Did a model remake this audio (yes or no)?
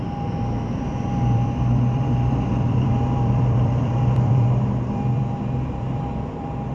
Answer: yes